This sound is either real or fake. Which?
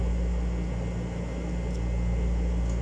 real